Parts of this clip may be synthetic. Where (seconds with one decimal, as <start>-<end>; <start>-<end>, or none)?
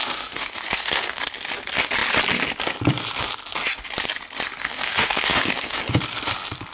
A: 0.0-1.2; 4.6-5.8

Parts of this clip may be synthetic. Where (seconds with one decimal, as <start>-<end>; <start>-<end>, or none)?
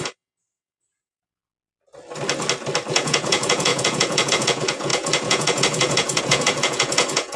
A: 0.0-1.4; 2.9-7.4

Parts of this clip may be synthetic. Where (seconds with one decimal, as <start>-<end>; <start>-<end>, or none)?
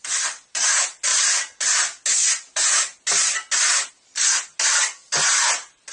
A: none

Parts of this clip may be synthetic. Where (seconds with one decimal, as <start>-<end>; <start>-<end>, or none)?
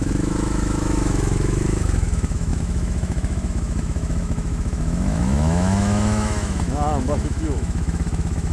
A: 0.0-8.5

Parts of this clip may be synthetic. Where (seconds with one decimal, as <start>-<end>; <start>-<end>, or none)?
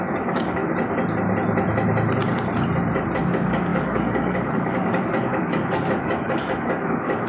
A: 0.0-0.6; 3.2-7.3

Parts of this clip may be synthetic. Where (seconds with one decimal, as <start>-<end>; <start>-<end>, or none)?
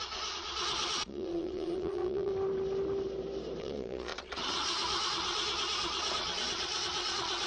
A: 0.0-2.3; 3.6-7.5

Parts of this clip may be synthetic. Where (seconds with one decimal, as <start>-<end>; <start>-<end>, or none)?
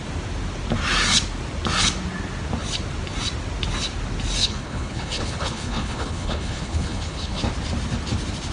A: 4.4-7.4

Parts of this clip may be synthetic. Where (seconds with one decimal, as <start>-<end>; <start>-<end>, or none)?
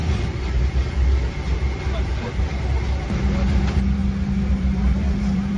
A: 0.0-4.0; 4.5-5.6